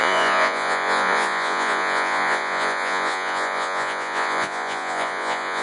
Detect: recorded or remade remade